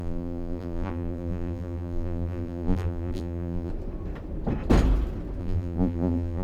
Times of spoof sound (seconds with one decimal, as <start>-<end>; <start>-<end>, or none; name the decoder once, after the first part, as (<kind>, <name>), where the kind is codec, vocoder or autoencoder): 0.0-3.7 (vocoder, BigVGAN v2); 5.4-6.4